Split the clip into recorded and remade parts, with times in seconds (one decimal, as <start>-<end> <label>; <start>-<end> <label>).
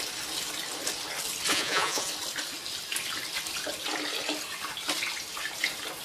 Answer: 0.0-1.5 recorded; 1.5-2.1 remade; 2.1-6.0 recorded